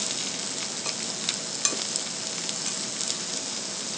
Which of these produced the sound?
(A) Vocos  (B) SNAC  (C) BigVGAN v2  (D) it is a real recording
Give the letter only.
D